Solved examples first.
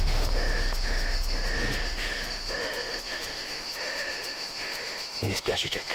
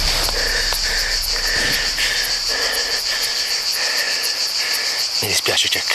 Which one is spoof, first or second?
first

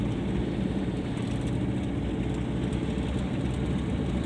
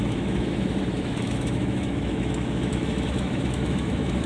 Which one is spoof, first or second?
second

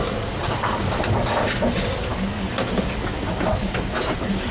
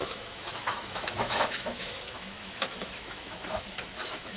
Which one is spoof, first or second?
second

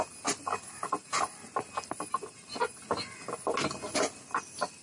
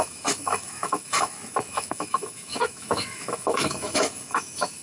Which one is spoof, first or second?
second